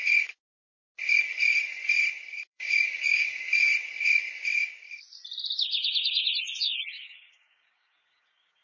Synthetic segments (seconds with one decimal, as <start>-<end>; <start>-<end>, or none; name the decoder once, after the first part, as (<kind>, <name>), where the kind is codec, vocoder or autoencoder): 2.5-3.7 (codec, DAC); 6.9-8.6